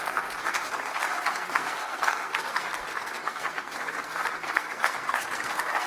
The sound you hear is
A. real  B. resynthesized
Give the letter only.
B